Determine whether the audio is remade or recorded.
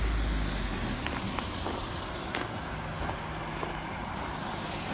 recorded